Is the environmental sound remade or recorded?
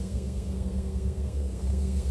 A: remade